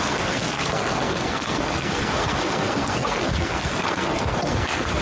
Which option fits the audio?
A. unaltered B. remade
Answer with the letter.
B